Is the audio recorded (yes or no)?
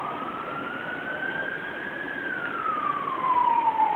yes